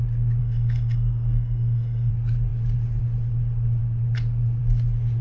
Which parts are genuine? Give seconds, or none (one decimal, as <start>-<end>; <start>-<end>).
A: 0.0-0.4; 2.1-5.2